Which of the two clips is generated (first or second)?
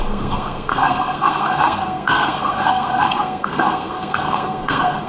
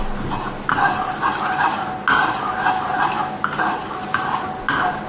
first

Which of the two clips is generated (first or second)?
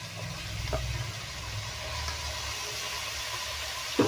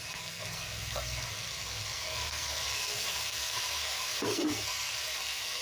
second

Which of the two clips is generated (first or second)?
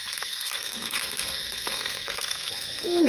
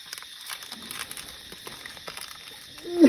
first